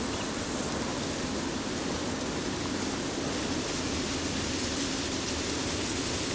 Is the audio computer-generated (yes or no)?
no